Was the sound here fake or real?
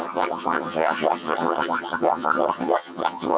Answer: fake